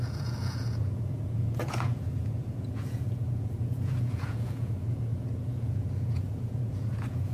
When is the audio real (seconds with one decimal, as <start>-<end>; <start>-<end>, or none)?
none